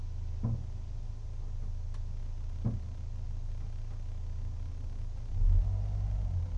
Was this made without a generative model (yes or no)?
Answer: yes